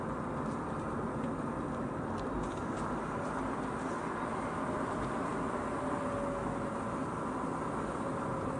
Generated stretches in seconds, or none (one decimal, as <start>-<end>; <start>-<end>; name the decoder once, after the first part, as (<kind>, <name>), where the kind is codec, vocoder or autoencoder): none